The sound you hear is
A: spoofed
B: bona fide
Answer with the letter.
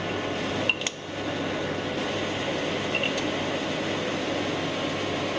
B